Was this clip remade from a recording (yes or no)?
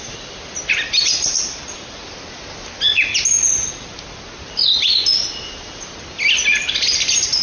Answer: no